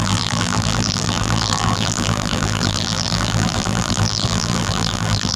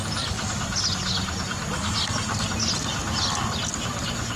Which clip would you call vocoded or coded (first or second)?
first